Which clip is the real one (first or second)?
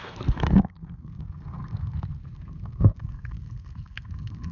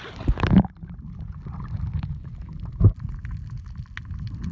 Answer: second